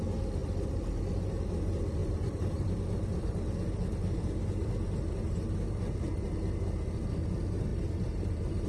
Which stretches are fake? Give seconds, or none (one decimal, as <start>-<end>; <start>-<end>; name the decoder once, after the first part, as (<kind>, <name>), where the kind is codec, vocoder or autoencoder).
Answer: 2.0-2.7 (vocoder, BigVGAN v2); 7.7-8.7